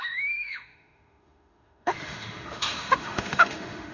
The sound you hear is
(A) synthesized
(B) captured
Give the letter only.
A